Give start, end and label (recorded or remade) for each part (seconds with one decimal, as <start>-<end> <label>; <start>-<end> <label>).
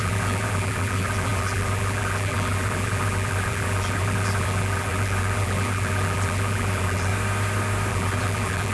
0.0-7.1 remade; 7.1-7.9 recorded; 7.9-8.7 remade